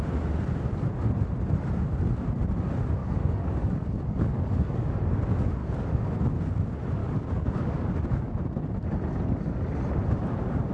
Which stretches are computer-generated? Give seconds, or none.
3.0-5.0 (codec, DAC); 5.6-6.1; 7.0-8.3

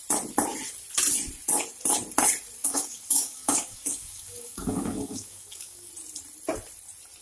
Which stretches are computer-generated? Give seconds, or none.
2.6-5.9 (codec, DAC)

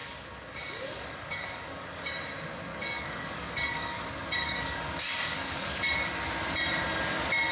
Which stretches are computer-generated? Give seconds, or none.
0.0-2.1 (codec, DAC); 2.7-6.2

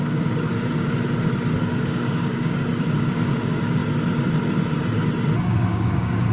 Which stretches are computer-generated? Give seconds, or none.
0.0-0.5 (codec, DAC); 1.6-3.8; 5.4-6.3